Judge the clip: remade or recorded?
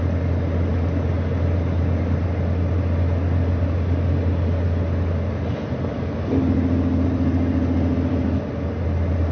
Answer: recorded